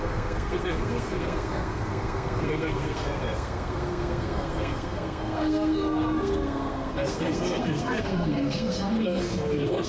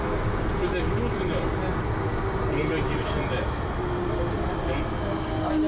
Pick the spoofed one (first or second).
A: first